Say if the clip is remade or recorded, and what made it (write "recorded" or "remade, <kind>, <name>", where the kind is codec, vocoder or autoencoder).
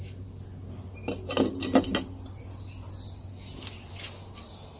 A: recorded